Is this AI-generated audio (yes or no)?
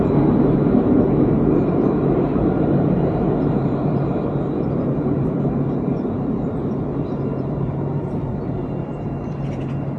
yes